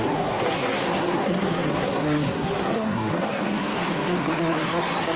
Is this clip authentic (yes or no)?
no